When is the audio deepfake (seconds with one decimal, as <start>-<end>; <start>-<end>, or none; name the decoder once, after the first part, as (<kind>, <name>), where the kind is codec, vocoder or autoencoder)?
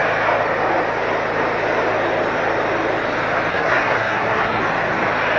3.5-4.6 (codec, SNAC)